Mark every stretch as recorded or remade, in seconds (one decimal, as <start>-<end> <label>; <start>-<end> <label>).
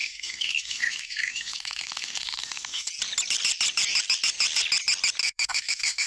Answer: 0.0-2.9 remade; 2.9-5.2 recorded; 5.2-6.1 remade